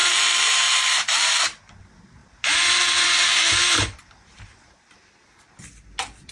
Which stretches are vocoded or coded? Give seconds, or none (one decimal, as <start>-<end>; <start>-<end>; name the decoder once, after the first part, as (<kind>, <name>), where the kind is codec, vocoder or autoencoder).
0.0-0.8 (vocoder, BigVGAN v2); 2.2-5.0